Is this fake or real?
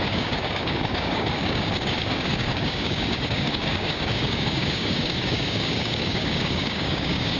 fake